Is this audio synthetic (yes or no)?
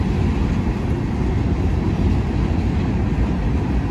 no